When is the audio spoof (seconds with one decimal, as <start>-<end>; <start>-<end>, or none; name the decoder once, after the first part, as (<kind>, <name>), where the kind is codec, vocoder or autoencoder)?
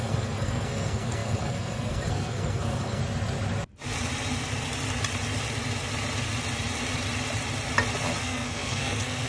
0.0-3.0 (codec, SNAC); 8.2-9.3